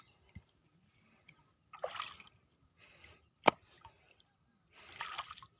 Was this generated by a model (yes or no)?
no